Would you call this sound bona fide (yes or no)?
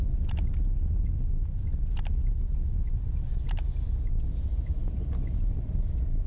yes